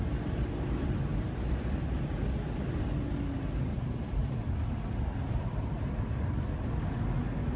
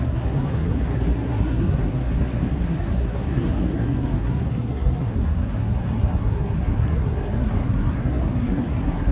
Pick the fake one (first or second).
second